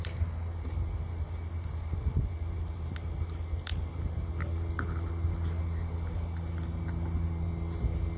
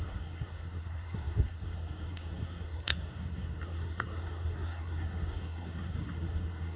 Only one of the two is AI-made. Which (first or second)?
second